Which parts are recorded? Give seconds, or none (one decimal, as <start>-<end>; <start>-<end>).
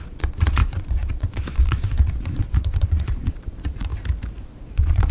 3.9-4.6